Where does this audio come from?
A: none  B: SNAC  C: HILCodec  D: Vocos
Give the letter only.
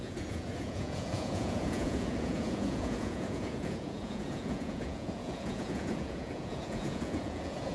D